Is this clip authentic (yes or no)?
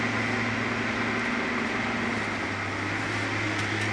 yes